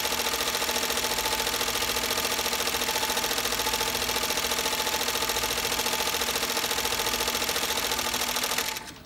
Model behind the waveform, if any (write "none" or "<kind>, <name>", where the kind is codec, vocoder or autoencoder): none